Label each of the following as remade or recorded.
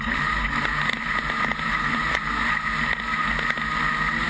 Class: recorded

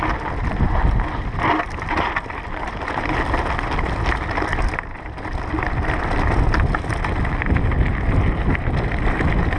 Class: recorded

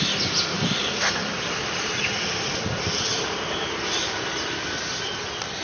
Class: recorded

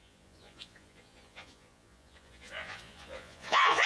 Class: remade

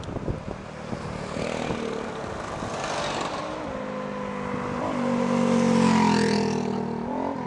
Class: recorded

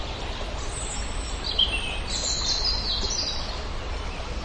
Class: recorded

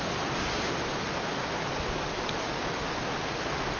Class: recorded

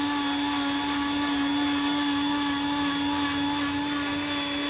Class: recorded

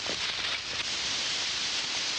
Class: recorded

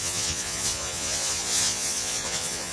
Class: remade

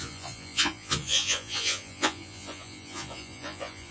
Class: remade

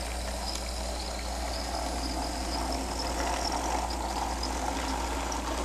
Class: recorded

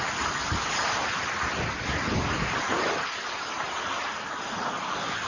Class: recorded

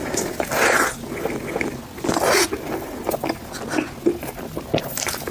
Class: recorded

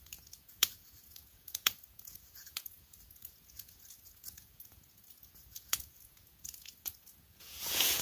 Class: remade